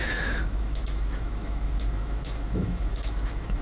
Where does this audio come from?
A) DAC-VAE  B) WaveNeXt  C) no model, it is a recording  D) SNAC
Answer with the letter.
A